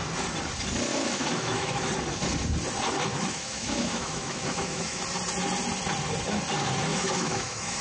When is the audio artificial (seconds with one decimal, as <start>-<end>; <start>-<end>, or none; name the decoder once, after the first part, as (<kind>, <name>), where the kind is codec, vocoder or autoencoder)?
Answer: 0.9-1.9 (autoencoder, DAC-VAE); 3.1-5.0; 6.9-7.8